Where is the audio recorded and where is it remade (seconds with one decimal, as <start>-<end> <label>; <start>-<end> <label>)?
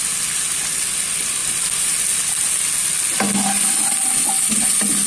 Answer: 0.0-5.1 recorded